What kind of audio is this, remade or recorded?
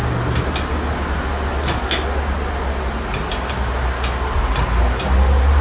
recorded